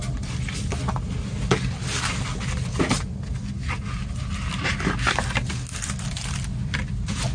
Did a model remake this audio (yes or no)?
no